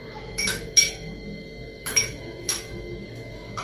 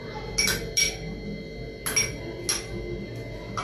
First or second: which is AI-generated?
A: first